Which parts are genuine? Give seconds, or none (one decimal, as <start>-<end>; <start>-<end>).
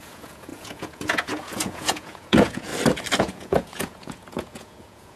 2.7-3.2